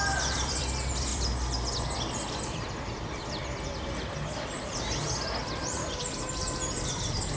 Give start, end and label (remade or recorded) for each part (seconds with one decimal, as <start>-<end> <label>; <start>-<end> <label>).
0.0-3.4 remade; 3.4-5.9 recorded; 5.9-7.4 remade